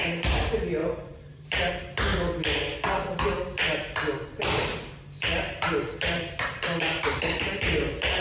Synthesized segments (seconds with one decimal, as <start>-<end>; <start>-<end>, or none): 0.8-1.7; 5.2-7.2